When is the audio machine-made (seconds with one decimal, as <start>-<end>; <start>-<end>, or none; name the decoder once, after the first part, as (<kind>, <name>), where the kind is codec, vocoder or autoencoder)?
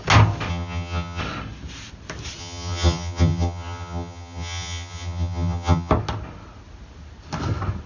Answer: 0.5-1.2 (vocoder, HiFi-GAN); 2.4-5.9